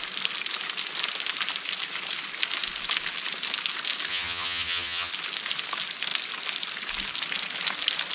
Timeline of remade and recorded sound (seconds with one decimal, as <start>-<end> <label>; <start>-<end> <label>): 0.0-4.1 recorded; 4.1-5.1 remade; 5.1-8.1 recorded